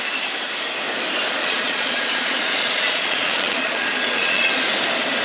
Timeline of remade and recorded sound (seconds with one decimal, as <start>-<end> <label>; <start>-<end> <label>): 0.0-1.4 recorded; 1.4-4.5 remade; 4.5-5.2 recorded